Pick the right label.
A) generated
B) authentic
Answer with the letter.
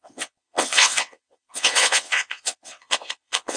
A